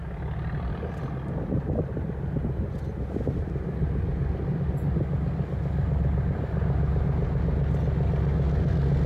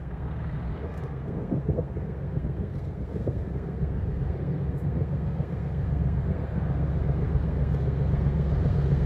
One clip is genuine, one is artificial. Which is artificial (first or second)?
second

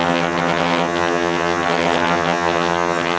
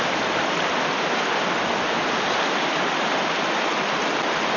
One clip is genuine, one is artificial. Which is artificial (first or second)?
first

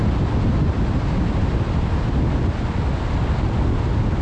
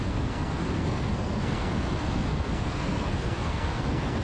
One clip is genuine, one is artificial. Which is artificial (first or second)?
second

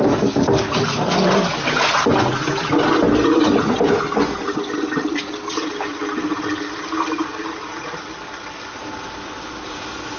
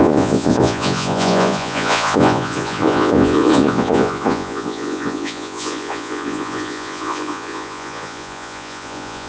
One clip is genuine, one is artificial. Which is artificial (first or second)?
second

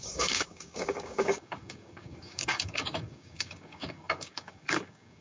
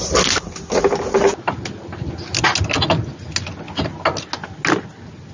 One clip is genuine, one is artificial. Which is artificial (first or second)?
first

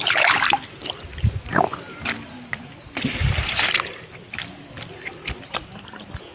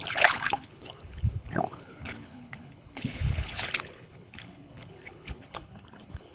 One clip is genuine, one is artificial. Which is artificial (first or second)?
second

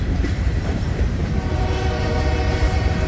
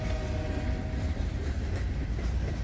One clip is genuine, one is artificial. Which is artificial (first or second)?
first